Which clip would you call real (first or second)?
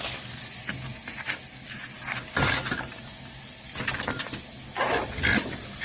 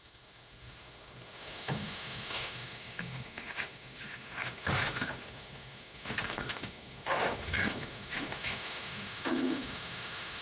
first